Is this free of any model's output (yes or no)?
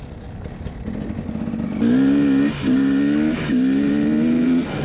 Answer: yes